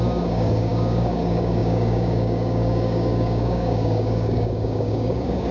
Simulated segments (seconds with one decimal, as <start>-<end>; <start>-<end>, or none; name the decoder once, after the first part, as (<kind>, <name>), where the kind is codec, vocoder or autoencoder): 0.0-5.5 (codec, DAC)